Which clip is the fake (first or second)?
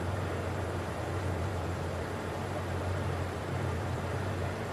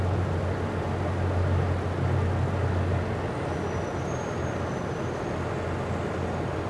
first